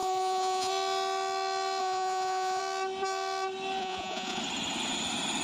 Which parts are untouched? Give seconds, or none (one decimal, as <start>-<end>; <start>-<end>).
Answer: 0.7-1.8; 2.6-3.8; 4.4-5.4